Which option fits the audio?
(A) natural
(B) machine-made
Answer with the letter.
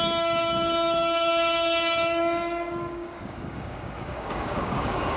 B